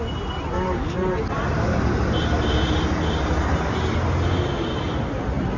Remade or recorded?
recorded